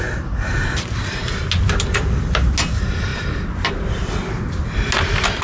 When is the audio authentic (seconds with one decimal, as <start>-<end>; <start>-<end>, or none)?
0.0-5.4